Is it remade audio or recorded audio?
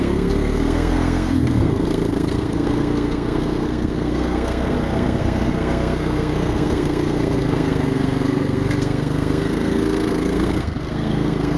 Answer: remade